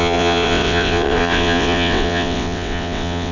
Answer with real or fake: fake